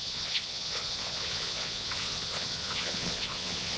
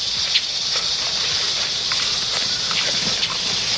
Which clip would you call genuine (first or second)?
second